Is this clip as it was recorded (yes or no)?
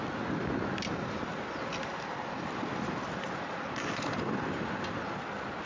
yes